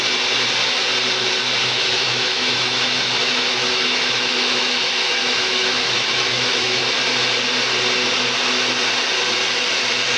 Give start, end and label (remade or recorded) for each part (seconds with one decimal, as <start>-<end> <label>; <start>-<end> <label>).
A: 0.0-1.6 recorded; 1.6-6.8 remade; 6.8-10.2 recorded